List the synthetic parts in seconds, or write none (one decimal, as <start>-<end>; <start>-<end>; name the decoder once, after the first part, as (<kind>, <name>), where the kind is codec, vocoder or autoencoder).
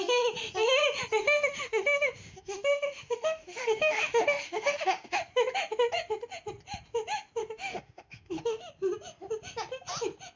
1.2-5.2 (autoencoder, DAC-VAE); 7.4-8.7